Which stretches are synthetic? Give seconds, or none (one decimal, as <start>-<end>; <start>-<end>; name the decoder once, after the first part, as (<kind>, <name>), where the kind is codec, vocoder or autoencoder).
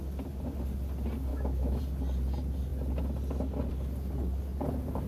1.3-1.8 (autoencoder, DAC-VAE)